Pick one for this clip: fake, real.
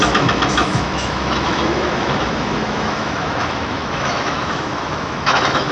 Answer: fake